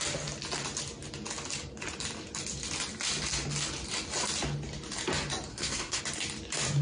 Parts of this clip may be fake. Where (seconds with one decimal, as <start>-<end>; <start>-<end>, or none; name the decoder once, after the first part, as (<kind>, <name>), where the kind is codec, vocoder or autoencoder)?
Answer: 5.5-6.0 (codec, SNAC)